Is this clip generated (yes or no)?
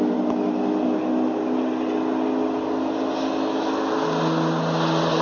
no